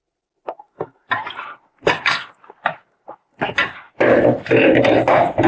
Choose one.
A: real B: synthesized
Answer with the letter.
A